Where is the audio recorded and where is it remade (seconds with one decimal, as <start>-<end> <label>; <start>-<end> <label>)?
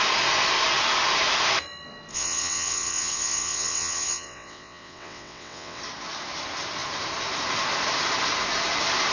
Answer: 0.0-2.1 recorded; 2.1-5.8 remade; 5.8-9.1 recorded